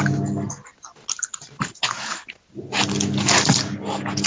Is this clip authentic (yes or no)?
yes